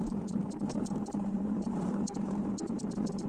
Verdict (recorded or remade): remade